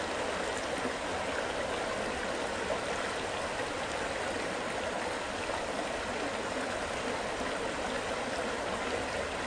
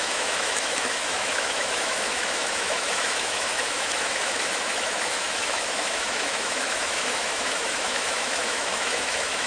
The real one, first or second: first